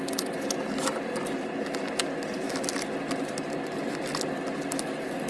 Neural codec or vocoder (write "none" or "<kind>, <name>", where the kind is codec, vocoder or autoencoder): none